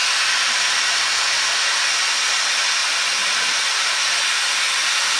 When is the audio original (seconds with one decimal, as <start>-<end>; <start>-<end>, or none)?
0.8-5.2